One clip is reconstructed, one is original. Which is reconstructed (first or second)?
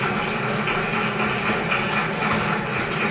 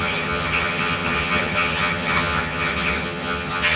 second